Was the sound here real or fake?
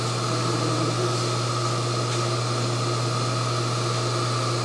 real